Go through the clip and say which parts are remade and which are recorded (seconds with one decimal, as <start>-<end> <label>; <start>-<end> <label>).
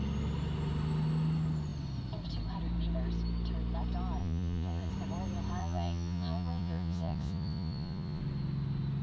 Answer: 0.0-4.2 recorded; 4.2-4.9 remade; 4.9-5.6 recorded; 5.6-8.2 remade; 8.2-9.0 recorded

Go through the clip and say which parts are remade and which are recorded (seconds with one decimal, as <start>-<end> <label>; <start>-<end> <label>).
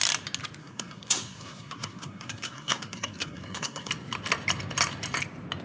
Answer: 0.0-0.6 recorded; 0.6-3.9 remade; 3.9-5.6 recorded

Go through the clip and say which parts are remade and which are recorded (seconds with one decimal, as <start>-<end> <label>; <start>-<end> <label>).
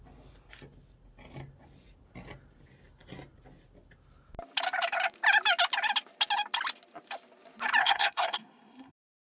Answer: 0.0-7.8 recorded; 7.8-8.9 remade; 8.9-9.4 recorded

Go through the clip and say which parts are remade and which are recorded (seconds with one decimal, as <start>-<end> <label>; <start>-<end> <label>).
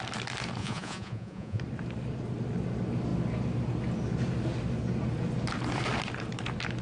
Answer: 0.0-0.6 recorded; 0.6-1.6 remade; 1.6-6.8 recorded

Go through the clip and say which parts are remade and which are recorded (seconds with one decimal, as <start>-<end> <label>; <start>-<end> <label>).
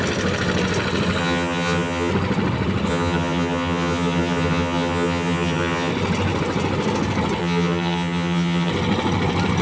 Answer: 0.0-1.2 recorded; 1.2-2.1 remade; 2.1-2.9 recorded; 2.9-5.9 remade; 5.9-7.4 recorded; 7.4-8.7 remade; 8.7-9.6 recorded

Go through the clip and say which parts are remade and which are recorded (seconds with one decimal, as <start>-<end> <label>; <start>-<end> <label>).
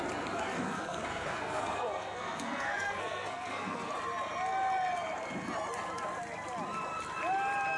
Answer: 0.0-0.5 recorded; 0.5-3.9 remade; 3.9-7.8 recorded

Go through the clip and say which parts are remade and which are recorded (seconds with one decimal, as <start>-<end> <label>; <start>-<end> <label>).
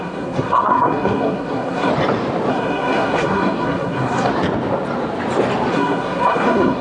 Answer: 0.0-1.9 remade; 1.9-2.5 recorded; 2.5-4.3 remade; 4.3-5.7 recorded; 5.7-6.8 remade